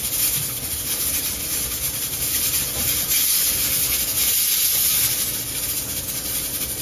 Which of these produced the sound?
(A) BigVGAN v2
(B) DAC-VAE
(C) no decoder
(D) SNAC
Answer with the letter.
C